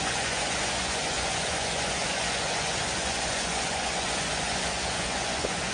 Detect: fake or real fake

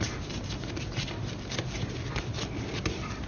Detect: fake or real real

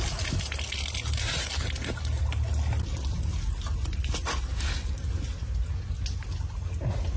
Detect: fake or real real